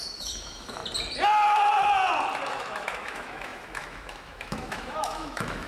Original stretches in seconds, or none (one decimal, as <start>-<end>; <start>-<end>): 0.8-2.5